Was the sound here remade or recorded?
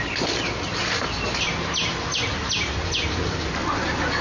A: recorded